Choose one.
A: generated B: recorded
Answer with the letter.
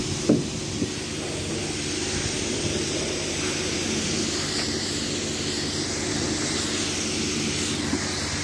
B